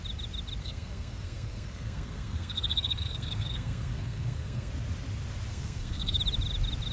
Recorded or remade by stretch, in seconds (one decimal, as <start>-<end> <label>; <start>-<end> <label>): 0.0-0.6 recorded; 0.6-4.7 remade; 4.7-5.5 recorded; 5.5-6.2 remade; 6.2-6.9 recorded